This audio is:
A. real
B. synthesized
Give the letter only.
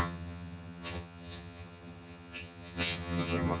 B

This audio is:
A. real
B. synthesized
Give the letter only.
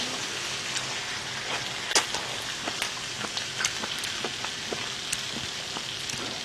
A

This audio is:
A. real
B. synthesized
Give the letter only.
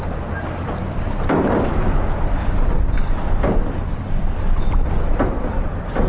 A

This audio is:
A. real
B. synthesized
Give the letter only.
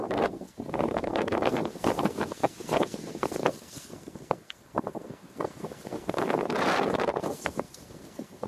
B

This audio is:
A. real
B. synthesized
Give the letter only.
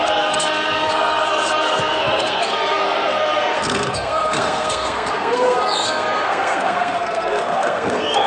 B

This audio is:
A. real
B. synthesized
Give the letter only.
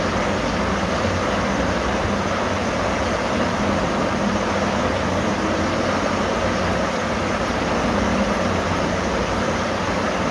A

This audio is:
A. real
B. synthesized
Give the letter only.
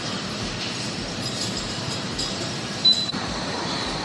B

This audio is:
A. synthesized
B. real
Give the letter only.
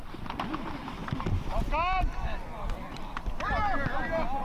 B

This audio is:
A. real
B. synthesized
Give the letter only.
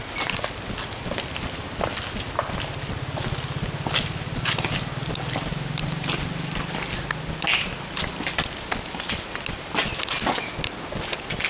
A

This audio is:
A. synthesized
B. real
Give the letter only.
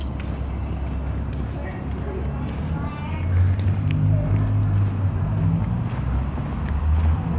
B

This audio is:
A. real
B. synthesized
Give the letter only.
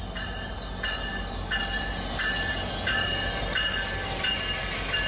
A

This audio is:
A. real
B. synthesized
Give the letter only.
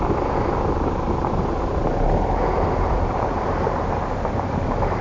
A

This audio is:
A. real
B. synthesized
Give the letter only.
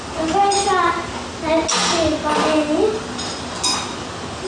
A